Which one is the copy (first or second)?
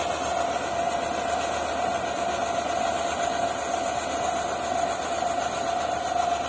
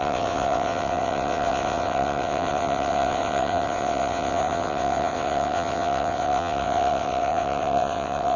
second